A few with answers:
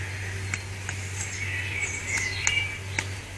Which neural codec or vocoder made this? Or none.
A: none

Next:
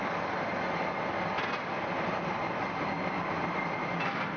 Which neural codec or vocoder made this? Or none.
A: none